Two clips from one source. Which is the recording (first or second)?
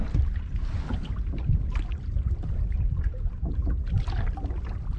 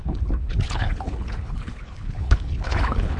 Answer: first